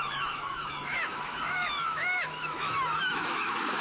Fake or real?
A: fake